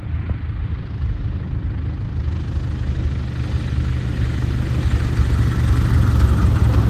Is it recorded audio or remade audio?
recorded